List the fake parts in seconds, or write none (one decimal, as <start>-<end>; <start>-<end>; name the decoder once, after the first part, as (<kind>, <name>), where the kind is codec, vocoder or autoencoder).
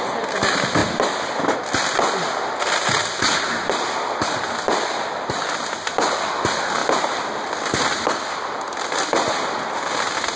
none